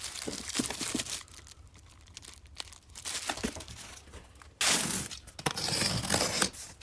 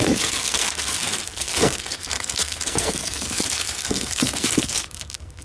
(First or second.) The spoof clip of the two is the second